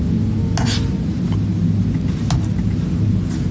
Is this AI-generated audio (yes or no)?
no